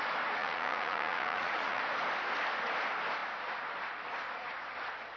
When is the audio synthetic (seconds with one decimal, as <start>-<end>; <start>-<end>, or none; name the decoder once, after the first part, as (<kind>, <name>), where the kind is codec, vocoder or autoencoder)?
0.4-1.8 (vocoder, Vocos)